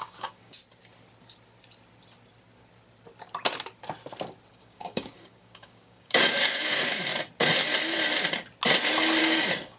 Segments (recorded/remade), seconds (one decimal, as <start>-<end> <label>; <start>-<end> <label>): 0.0-0.6 remade; 0.6-4.5 recorded; 4.5-7.1 remade; 7.1-9.2 recorded; 9.2-9.8 remade